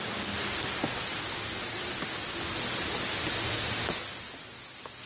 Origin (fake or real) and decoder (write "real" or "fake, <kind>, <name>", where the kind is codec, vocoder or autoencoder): real